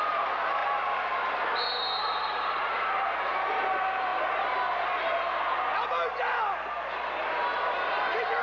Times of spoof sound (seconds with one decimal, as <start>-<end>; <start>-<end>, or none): 0.0-0.6; 2.0-4.1; 4.7-8.4